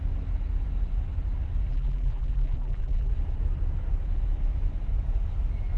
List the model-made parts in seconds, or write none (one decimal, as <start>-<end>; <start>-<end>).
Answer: 1.7-3.1